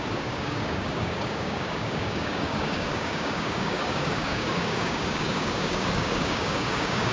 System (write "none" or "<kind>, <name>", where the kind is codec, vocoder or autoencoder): codec, DAC